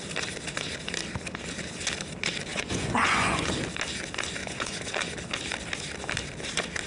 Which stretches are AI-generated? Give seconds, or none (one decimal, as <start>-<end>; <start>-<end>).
2.5-3.5; 4.4-4.9